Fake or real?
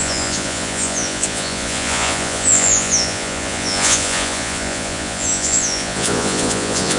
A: fake